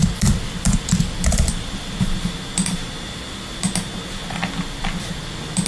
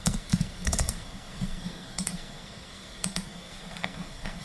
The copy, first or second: second